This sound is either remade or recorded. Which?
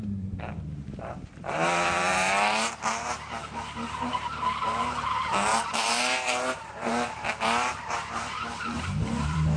remade